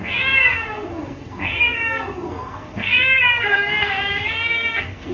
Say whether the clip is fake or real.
fake